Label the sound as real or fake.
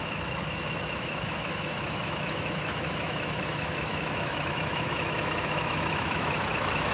fake